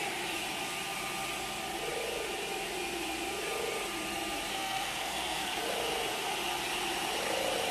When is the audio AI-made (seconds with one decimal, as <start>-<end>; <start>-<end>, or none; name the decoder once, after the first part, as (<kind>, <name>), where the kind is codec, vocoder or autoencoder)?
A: 4.5-5.7 (codec, SNAC)